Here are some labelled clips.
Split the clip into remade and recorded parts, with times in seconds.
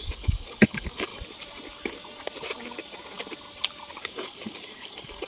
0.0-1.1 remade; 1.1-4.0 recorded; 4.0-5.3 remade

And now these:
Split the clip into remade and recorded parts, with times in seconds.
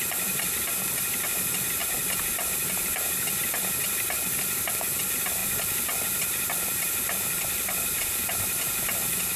0.0-9.4 recorded